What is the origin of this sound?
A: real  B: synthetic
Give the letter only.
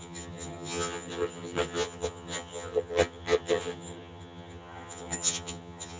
B